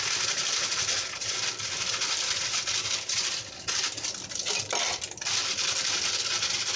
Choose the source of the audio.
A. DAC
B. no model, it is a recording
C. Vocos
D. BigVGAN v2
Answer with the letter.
B